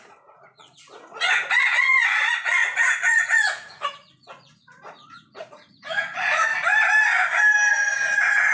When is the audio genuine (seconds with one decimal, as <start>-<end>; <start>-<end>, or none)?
6.5-7.7